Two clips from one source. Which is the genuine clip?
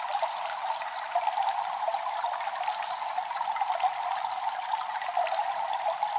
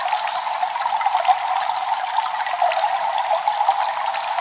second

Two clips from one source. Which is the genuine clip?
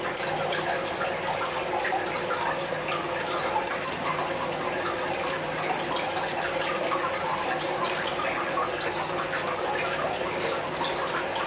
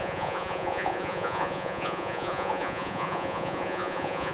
first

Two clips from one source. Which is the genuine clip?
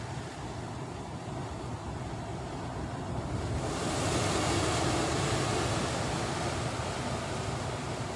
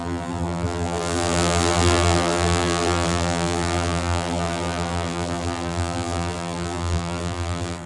first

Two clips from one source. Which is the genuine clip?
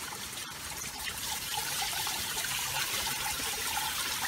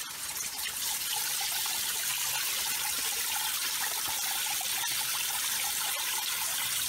second